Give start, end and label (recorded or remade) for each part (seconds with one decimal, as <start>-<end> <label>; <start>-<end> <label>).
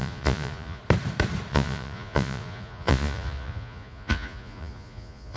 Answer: 0.0-0.8 remade; 0.8-1.5 recorded; 1.5-5.4 remade